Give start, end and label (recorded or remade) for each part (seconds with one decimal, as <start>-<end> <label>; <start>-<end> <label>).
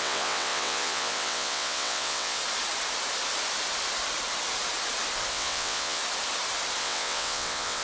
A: 0.0-2.4 remade; 2.4-5.3 recorded; 5.3-6.0 remade; 6.0-6.8 recorded; 6.8-7.8 remade